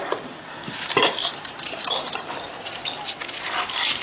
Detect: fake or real real